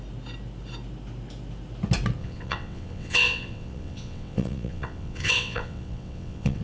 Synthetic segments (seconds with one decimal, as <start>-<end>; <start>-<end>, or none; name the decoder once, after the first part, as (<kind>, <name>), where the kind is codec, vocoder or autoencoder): 2.2-6.6 (vocoder, WaveNeXt)